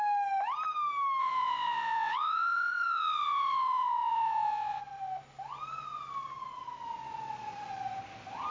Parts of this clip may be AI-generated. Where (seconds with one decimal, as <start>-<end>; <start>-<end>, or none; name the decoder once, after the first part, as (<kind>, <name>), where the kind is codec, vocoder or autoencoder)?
1.2-4.8 (vocoder, WaveNeXt)